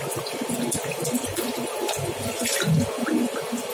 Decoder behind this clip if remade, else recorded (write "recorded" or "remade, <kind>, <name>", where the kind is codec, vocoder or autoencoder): recorded